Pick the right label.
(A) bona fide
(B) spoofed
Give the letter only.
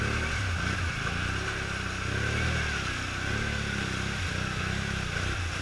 A